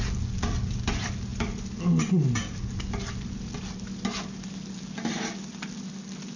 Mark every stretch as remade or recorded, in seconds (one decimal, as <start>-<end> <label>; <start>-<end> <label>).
0.0-6.4 recorded